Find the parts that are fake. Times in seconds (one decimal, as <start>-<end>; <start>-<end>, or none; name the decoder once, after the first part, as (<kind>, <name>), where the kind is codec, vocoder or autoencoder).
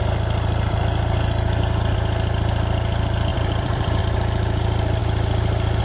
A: 0.0-1.6 (vocoder, BigVGAN v2); 3.3-4.0; 5.0-5.8